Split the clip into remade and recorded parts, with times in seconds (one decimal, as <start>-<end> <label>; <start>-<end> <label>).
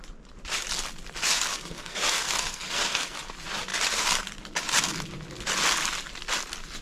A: 0.0-1.5 recorded; 1.5-3.2 remade; 3.2-6.8 recorded